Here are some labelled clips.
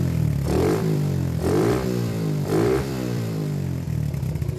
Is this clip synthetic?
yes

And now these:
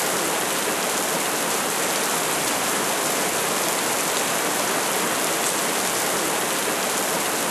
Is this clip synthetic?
no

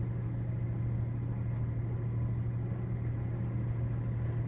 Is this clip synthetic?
no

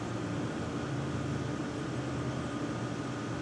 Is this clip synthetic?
no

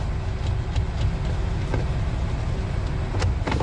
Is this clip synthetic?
no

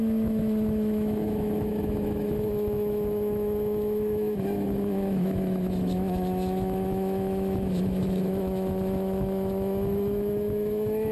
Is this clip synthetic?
yes